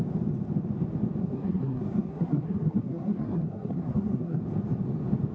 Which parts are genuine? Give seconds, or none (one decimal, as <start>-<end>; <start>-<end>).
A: 0.0-1.2; 4.4-5.3